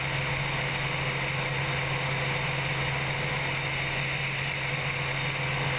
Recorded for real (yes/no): yes